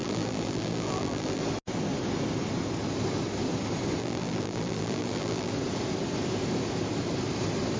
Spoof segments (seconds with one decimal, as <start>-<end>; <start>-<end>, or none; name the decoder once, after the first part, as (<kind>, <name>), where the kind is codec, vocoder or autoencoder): 0.0-1.4 (vocoder, BigVGAN v2); 4.0-5.5